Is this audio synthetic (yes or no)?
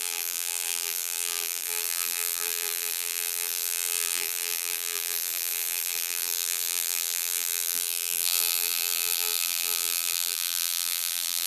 yes